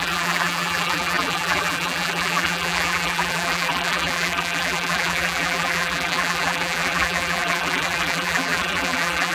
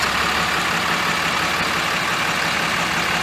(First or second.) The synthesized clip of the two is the first